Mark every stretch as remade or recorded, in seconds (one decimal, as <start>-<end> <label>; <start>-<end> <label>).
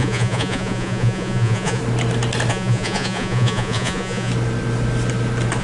0.0-1.8 remade; 1.8-2.5 recorded; 2.5-4.3 remade; 4.3-5.6 recorded